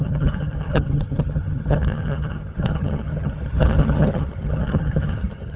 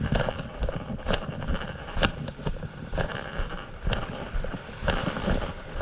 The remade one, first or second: first